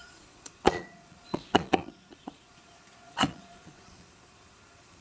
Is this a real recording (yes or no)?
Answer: no